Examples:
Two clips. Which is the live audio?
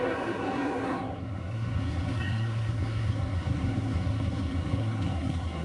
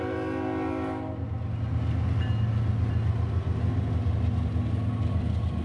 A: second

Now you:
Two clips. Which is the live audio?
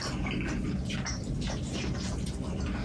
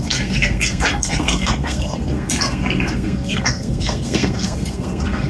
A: first